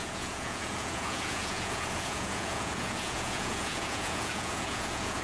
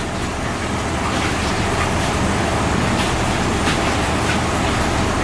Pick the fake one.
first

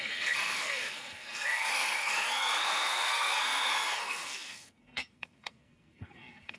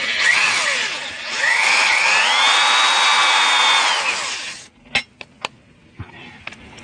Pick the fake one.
first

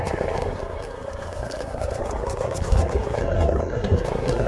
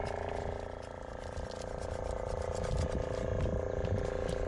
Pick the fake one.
first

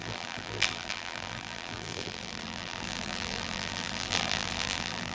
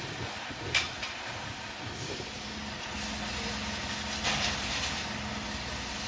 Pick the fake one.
first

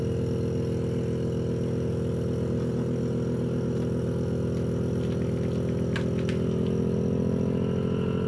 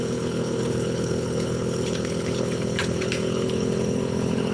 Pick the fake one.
second